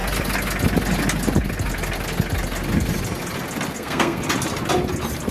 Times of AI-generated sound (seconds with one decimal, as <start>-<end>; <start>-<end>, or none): 3.7-4.2

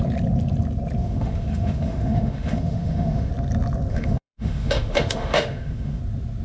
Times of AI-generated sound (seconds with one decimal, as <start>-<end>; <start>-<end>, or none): 1.0-3.3; 3.9-6.0

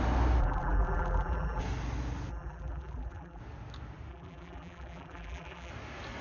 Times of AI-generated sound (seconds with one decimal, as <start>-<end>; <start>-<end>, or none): 0.4-1.6; 2.3-3.4; 4.1-5.7

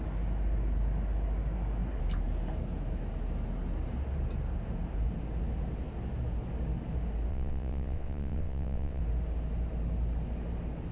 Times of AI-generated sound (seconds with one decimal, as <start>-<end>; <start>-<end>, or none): 7.3-9.0

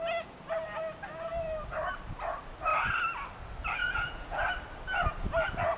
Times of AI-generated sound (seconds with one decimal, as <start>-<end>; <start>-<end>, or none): 3.8-4.4

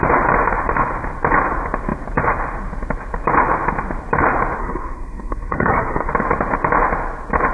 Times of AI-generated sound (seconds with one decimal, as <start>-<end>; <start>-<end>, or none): 4.6-6.1

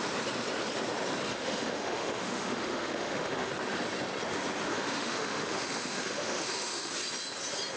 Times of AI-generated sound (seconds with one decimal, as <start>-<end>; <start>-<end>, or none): 1.3-3.5; 4.7-6.9